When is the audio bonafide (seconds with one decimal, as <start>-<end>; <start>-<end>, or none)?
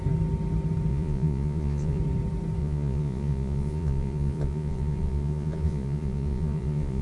0.0-0.9; 2.0-2.6